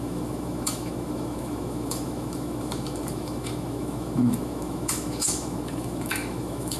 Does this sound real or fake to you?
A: fake